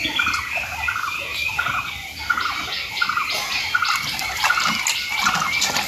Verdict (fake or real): real